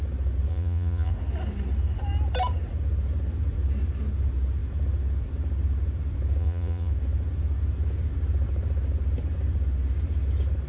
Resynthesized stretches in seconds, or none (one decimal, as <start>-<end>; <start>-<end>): 0.5-1.1; 6.4-6.9